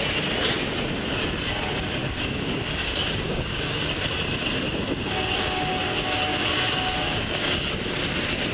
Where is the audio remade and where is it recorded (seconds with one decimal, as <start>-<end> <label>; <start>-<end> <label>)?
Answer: 0.0-2.0 recorded; 2.0-4.0 remade; 4.0-6.3 recorded; 6.3-7.8 remade; 7.8-8.5 recorded